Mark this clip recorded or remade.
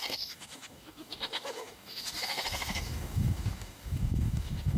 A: remade